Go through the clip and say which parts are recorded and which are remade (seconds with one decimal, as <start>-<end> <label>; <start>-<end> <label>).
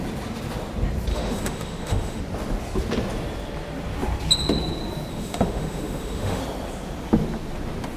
0.0-1.1 recorded; 1.1-2.2 remade; 2.2-5.1 recorded; 5.1-6.4 remade; 6.4-8.0 recorded